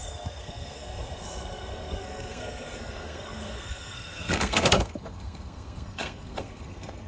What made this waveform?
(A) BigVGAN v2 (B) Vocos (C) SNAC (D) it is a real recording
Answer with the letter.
C